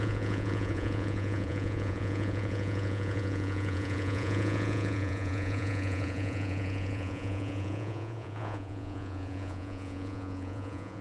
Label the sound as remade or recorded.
remade